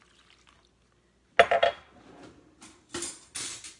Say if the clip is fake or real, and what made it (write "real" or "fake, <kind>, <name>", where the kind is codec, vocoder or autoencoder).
real